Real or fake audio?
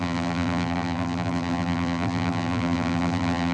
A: fake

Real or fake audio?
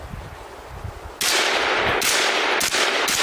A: real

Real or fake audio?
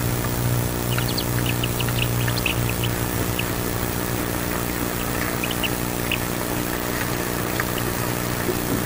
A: real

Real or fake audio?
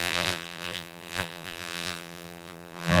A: fake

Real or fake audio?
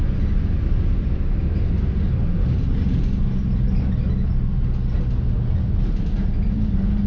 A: real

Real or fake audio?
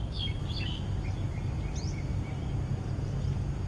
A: real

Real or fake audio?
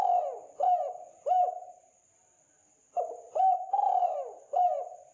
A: fake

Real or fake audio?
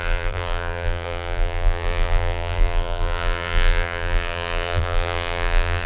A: fake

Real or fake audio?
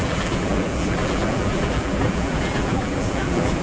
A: fake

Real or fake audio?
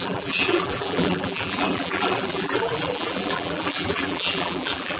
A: fake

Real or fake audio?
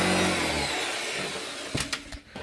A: real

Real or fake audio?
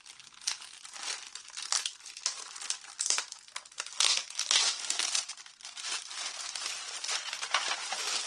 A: real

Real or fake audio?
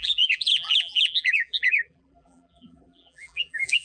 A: fake